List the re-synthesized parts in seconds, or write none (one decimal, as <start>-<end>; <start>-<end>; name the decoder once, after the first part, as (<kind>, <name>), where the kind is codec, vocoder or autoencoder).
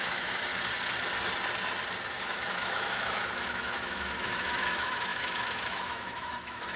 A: 0.0-0.5 (autoencoder, DAC-VAE); 2.2-6.8